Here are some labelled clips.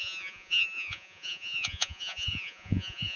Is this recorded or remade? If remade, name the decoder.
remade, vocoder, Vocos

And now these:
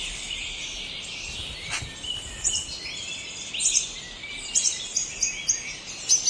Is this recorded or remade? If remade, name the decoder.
recorded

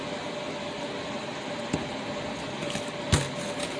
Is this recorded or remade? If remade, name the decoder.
recorded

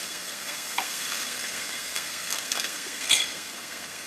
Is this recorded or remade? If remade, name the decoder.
remade, codec, SNAC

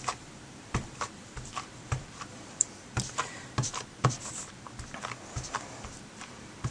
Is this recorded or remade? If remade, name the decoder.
remade, vocoder, BigVGAN v2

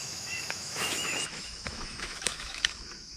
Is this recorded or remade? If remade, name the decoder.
remade, autoencoder, DAC-VAE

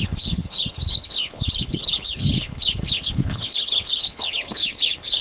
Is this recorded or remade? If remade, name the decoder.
remade, codec, HILCodec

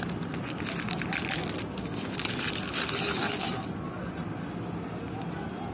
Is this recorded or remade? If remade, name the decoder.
recorded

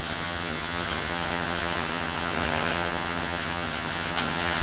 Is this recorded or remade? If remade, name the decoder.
remade, vocoder, HiFi-GAN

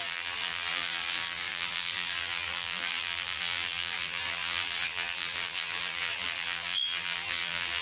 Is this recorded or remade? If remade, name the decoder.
remade, vocoder, BigVGAN v2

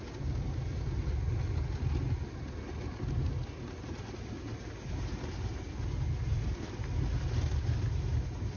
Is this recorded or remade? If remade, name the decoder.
recorded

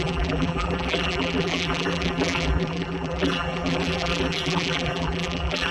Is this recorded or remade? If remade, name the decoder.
remade, vocoder, BigVGAN v2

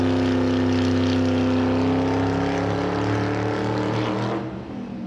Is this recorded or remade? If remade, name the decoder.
recorded